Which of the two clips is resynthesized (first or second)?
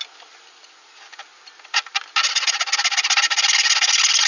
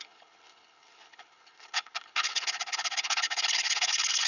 second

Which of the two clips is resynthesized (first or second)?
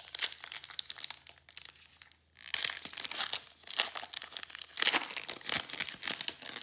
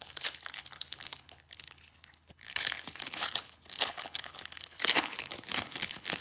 second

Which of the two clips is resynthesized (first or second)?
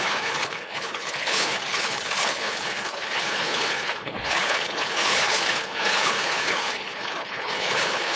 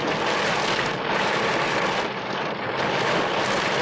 first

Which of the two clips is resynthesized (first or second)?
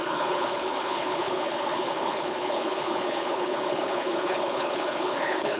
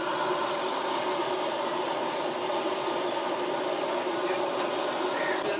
first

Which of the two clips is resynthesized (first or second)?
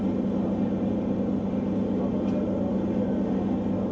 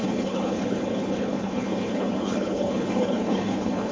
second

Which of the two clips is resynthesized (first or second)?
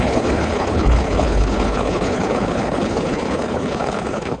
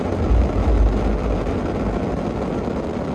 first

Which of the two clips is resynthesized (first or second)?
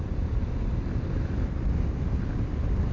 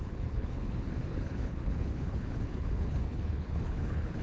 second